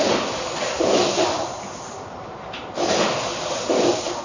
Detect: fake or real real